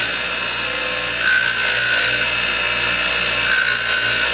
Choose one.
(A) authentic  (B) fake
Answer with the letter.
A